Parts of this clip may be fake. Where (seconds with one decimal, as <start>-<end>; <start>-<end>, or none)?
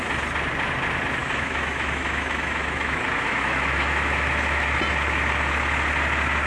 1.2-4.8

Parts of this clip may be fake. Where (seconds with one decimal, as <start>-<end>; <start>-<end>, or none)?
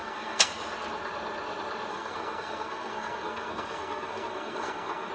0.0-0.5; 1.9-5.1